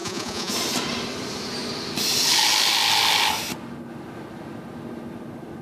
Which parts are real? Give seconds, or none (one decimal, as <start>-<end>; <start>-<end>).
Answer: 0.5-5.6